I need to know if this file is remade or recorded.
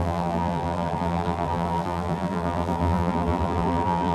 remade